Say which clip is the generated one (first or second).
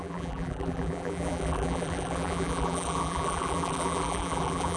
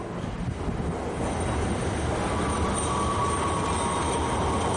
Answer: first